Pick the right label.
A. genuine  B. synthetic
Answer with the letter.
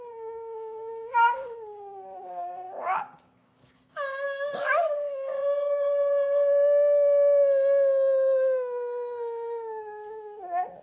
B